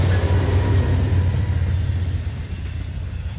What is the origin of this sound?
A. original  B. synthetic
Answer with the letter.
A